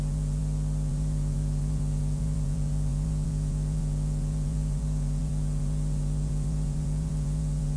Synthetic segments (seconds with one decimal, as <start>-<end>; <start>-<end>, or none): 0.0-0.4; 0.9-7.8